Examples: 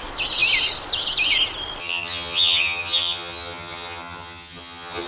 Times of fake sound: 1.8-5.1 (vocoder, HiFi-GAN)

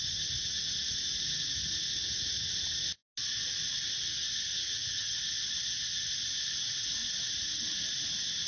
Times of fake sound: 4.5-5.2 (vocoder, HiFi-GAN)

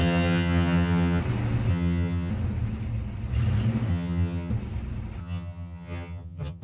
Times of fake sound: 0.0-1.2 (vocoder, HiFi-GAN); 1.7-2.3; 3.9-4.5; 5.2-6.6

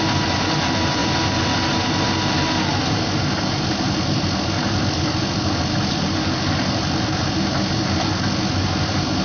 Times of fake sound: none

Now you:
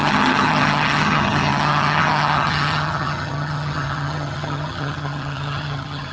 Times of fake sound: 0.0-6.1 (vocoder, HiFi-GAN)

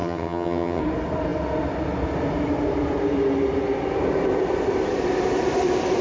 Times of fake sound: 0.0-0.8 (vocoder, HiFi-GAN)

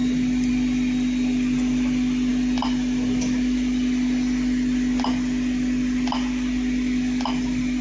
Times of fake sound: none

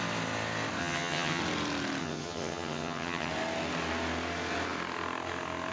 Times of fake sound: 0.8-1.4 (vocoder, HiFi-GAN); 2.0-3.3